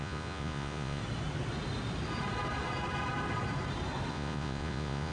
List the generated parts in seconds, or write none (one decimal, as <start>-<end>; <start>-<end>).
0.0-1.0; 4.1-5.1

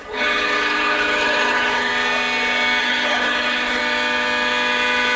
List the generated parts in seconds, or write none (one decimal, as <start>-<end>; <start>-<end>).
0.0-1.9; 2.8-3.8